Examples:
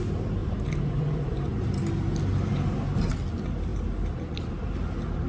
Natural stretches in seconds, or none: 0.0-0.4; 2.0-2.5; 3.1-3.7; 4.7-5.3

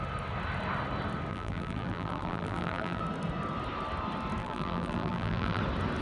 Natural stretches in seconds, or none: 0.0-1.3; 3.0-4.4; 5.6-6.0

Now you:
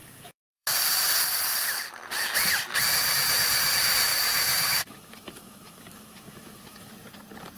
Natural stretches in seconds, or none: 0.7-4.1; 6.9-7.6

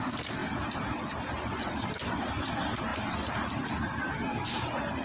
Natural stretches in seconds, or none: 0.0-5.0

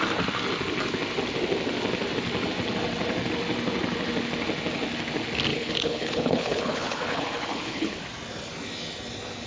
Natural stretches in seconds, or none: 0.0-5.5; 8.0-9.5